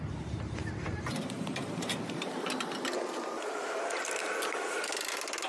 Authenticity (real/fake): fake